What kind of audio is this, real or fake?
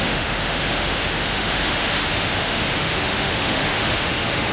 fake